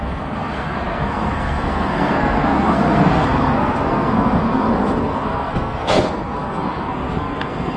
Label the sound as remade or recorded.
remade